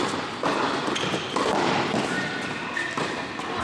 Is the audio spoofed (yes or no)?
no